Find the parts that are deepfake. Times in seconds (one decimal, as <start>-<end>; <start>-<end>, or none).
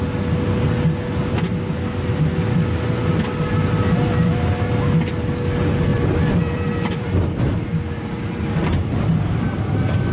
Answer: 5.9-9.5